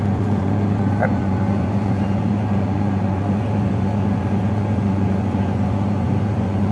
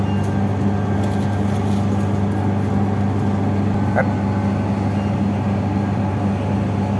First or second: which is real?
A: second